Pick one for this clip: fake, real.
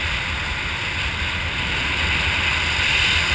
real